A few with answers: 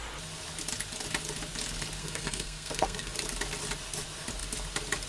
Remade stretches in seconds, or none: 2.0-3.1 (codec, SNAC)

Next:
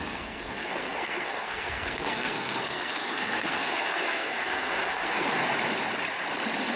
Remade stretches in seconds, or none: 0.0-5.3 (codec, SNAC)

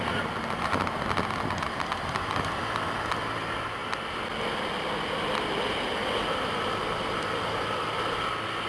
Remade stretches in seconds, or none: none